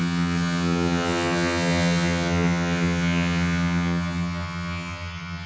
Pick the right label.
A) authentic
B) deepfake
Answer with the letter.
B